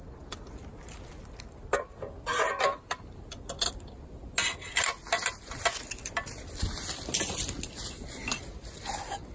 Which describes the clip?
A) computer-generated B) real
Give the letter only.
B